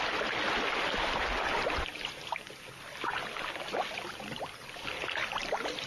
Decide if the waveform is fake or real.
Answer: real